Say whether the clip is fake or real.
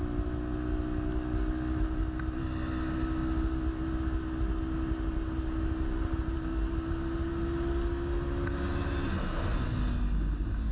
real